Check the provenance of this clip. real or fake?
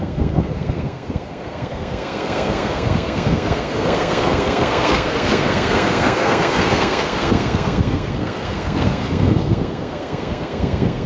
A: fake